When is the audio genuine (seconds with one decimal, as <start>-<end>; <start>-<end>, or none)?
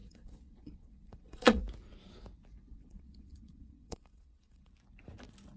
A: 1.6-2.7; 4.7-5.6